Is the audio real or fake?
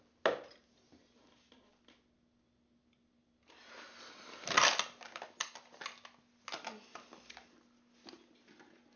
real